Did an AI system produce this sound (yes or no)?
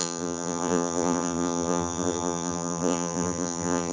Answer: yes